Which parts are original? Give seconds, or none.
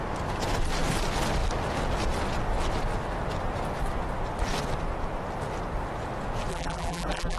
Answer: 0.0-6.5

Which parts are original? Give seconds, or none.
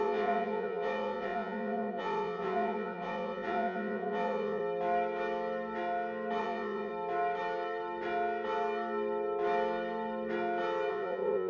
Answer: 4.6-6.4; 6.9-10.9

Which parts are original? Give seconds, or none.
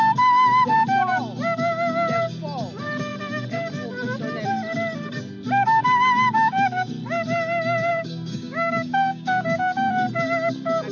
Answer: 0.0-7.9; 9.9-10.9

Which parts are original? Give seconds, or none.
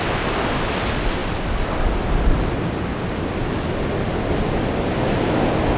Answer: 0.0-5.8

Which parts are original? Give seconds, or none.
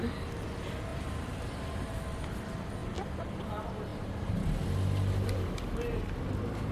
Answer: 0.0-0.9; 1.9-2.8; 3.4-3.9; 4.5-6.7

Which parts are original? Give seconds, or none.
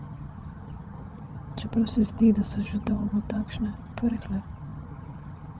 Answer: none